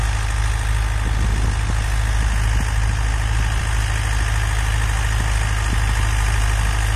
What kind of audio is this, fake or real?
real